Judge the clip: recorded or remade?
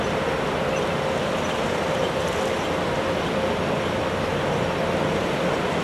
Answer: recorded